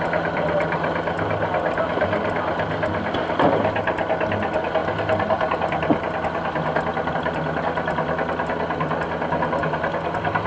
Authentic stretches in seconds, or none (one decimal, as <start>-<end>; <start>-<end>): 0.0-10.5